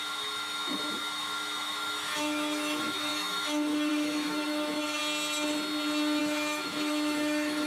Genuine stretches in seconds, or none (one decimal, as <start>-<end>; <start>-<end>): 5.0-6.2